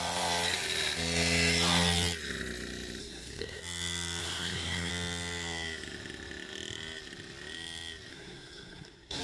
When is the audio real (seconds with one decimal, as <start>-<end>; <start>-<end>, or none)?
0.0-3.0; 3.6-4.2; 4.9-8.1